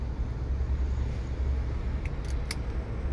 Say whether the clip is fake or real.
real